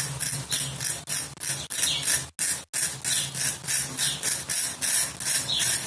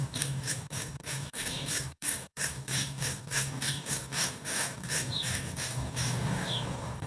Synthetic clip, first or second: second